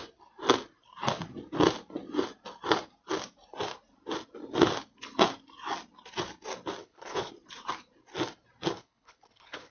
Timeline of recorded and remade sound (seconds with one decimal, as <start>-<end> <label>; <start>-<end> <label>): 0.0-6.8 recorded; 6.8-7.3 remade; 7.3-8.7 recorded; 8.7-9.7 remade